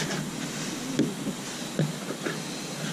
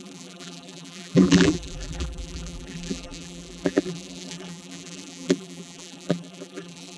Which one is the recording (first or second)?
first